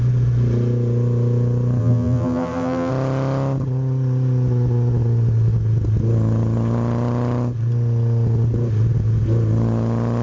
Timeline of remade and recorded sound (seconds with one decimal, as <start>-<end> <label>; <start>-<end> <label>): 0.0-1.8 recorded; 1.8-2.9 remade; 2.9-10.2 recorded